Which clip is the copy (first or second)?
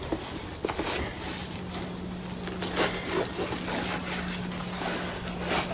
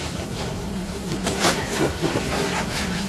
second